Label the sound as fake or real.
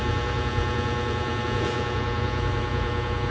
fake